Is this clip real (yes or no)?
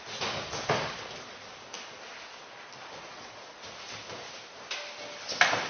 yes